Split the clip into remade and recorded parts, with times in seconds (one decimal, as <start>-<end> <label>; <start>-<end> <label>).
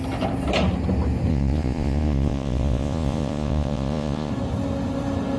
0.0-1.3 recorded; 1.3-4.3 remade; 4.3-5.4 recorded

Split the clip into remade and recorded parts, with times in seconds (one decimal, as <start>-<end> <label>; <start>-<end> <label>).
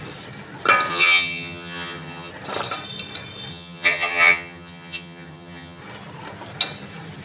0.0-0.9 recorded; 0.9-2.3 remade; 2.3-3.5 recorded; 3.5-5.8 remade; 5.8-7.2 recorded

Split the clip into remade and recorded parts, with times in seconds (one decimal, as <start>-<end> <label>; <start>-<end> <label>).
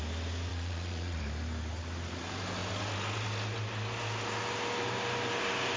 0.0-0.5 recorded; 0.5-1.2 remade; 1.2-5.8 recorded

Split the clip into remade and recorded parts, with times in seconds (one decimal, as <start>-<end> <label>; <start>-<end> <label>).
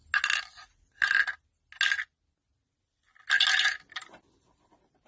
0.0-5.1 recorded